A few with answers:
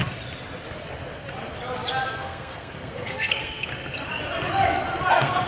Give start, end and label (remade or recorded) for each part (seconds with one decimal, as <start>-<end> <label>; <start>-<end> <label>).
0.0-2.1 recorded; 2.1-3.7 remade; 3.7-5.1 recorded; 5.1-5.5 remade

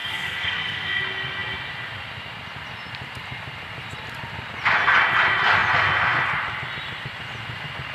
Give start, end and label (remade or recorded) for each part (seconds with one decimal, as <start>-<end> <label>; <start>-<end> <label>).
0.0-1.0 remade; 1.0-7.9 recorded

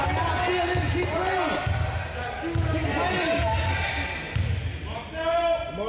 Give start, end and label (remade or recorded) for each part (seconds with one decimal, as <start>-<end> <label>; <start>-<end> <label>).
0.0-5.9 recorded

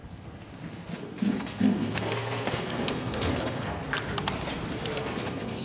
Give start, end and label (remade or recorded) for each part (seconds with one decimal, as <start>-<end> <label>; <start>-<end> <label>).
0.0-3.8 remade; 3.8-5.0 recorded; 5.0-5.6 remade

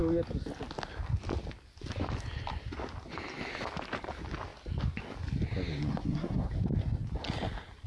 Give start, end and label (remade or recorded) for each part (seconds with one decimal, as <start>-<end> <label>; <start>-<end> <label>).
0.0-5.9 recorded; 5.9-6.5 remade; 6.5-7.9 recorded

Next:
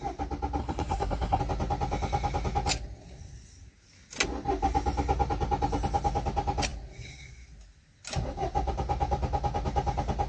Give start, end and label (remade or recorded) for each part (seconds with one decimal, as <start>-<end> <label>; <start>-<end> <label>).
0.0-0.6 recorded; 0.6-1.4 remade; 1.4-10.3 recorded

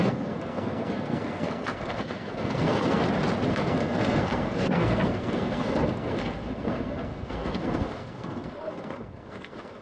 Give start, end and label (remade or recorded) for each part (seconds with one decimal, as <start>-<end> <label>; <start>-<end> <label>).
0.0-3.0 remade; 3.0-3.5 recorded; 3.5-9.8 remade

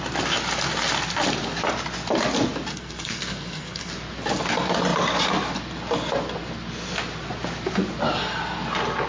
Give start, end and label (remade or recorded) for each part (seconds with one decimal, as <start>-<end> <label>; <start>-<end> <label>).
0.0-2.7 recorded; 2.7-3.9 remade; 3.9-9.1 recorded